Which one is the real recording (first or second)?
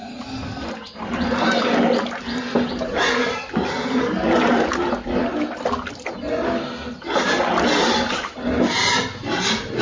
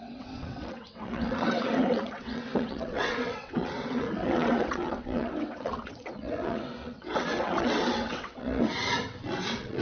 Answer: first